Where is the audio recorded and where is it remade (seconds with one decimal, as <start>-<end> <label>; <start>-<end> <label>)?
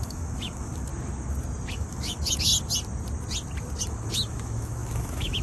0.0-0.9 remade; 0.9-1.7 recorded; 1.7-2.5 remade; 2.5-3.8 recorded; 3.8-5.4 remade